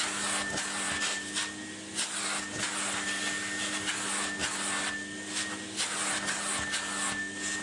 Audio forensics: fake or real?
real